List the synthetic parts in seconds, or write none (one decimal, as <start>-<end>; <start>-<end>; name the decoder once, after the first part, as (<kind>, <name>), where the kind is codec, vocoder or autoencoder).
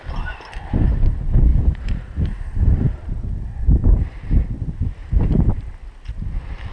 1.5-3.0 (vocoder, BigVGAN v2); 3.8-4.3; 5.0-5.7